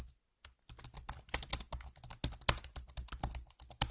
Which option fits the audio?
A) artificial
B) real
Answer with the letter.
B